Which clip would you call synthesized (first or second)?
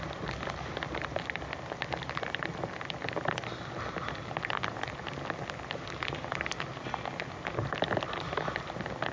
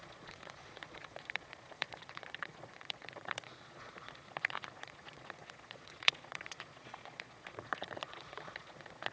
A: second